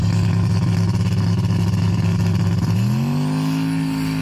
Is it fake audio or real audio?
real